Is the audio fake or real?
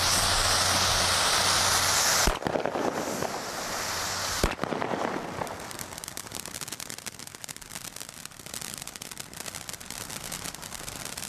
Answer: real